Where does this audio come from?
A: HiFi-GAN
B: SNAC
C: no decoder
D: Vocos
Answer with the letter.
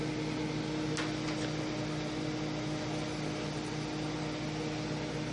C